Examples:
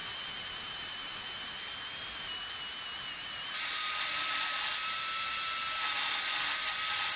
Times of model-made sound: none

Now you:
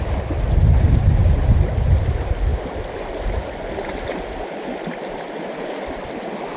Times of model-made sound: none

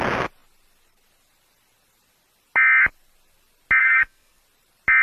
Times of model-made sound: 3.8-4.4 (codec, SNAC)

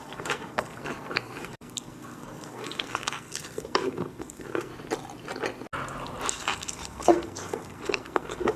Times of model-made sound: 0.0-4.7 (codec, SNAC); 6.3-8.6

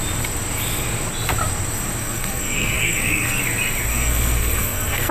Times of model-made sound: 2.0-3.4 (codec, SNAC); 3.9-5.1

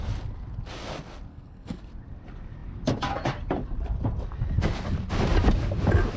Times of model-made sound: 1.3-1.8 (codec, SNAC)